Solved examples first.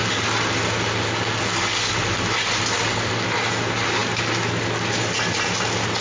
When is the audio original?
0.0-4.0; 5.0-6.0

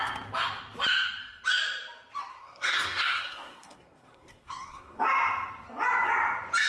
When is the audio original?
0.0-2.3; 5.0-6.7

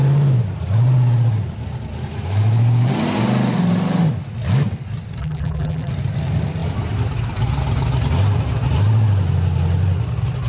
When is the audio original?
0.0-5.2; 5.9-10.5